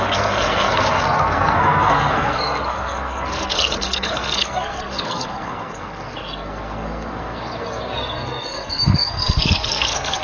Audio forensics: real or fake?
fake